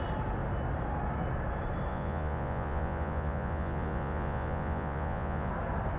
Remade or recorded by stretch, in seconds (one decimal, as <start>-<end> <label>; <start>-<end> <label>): 0.0-1.9 recorded; 1.9-5.5 remade; 5.5-6.0 recorded